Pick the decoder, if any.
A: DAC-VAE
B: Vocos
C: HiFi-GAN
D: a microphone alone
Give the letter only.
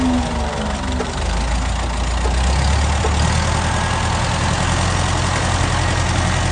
D